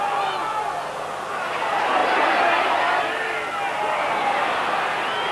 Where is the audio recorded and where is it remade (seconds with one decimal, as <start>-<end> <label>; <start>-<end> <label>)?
0.0-5.3 recorded